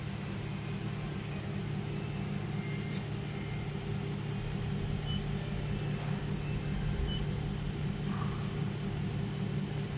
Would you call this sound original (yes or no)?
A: yes